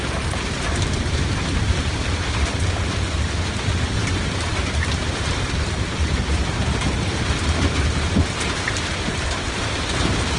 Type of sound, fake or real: fake